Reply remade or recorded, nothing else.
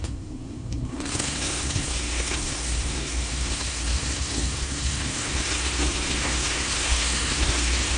remade